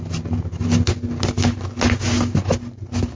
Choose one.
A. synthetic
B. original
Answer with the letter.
B